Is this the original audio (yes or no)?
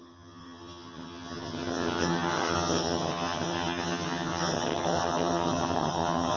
no